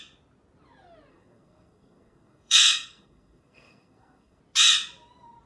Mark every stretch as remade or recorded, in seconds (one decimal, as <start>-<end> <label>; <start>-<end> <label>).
0.0-1.1 recorded; 1.1-4.4 remade; 4.4-5.5 recorded